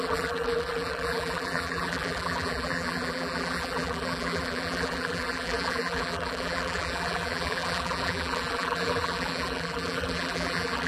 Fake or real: fake